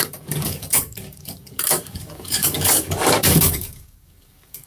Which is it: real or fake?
fake